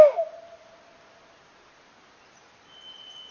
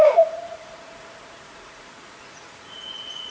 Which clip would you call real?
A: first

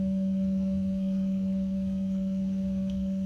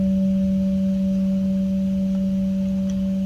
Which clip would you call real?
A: second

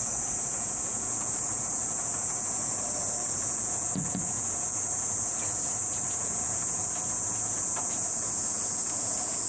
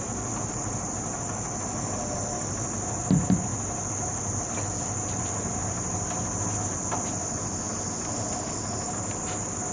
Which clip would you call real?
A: second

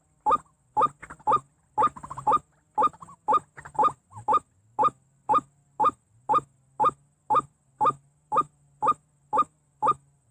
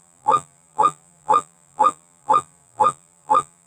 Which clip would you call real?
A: first